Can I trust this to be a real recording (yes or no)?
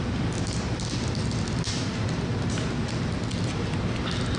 yes